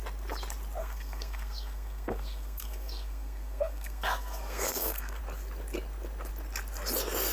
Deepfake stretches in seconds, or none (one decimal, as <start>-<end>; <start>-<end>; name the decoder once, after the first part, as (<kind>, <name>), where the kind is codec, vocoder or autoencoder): 0.8-5.2 (codec, SNAC)